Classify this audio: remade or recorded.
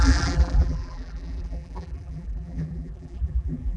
remade